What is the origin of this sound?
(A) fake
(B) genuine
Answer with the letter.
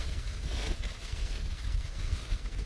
A